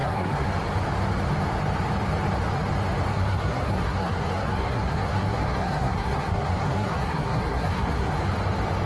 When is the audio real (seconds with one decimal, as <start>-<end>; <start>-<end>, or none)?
0.5-3.1; 8.1-8.9